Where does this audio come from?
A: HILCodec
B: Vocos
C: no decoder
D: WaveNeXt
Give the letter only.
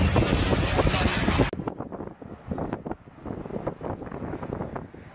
C